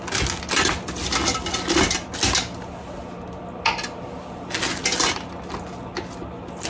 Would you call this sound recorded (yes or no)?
yes